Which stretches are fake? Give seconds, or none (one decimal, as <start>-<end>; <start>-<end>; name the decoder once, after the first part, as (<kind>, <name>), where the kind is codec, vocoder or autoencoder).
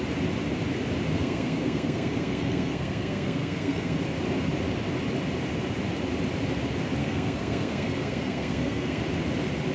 1.1-4.0 (codec, SNAC); 7.0-9.0